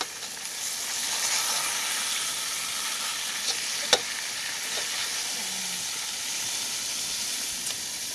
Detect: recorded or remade recorded